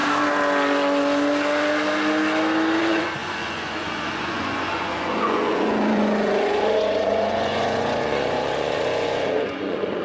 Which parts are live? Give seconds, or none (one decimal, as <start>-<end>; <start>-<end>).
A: 0.0-2.8